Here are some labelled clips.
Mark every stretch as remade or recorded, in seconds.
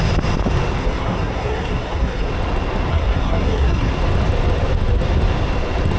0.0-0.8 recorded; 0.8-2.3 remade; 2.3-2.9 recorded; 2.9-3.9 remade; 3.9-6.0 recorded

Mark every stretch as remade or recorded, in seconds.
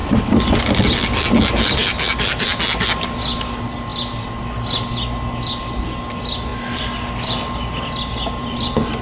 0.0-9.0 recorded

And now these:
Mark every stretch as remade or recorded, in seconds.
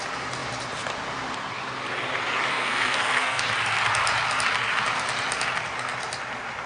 0.0-2.5 recorded; 2.5-3.4 remade; 3.4-6.7 recorded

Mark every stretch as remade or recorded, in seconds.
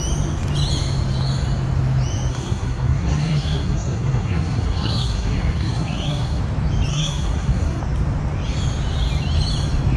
0.0-2.3 recorded; 2.3-6.4 remade; 6.4-6.9 recorded; 6.9-7.8 remade; 7.8-10.0 recorded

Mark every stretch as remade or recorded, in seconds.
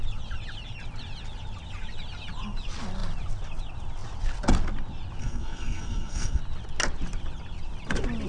0.0-5.2 recorded; 5.2-6.4 remade; 6.4-8.3 recorded